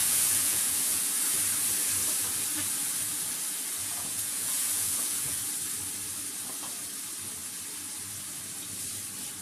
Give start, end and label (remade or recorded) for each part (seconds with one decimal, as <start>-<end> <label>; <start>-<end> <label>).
0.0-1.1 remade; 1.1-3.8 recorded; 3.8-5.4 remade; 5.4-9.4 recorded